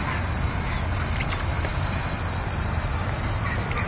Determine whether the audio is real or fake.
real